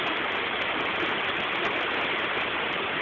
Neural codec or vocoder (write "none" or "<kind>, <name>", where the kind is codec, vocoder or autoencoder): none